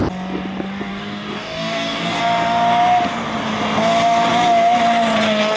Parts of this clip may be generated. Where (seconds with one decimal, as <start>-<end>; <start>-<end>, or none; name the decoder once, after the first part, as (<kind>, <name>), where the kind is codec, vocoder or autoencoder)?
0.9-2.2 (codec, DAC)